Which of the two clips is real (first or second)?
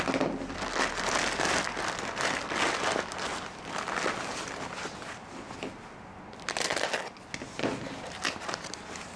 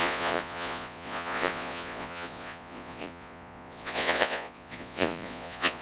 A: first